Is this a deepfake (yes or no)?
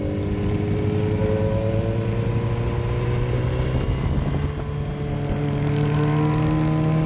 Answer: no